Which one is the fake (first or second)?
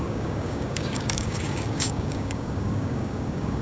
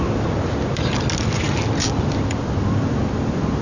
first